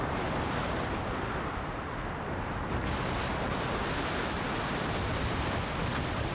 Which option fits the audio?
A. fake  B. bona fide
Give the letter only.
B